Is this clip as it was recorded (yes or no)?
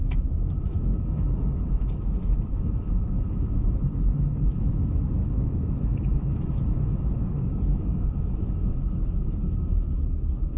no